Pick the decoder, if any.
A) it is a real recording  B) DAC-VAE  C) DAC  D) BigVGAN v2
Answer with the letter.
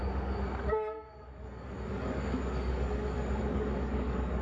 C